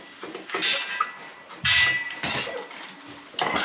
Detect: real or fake real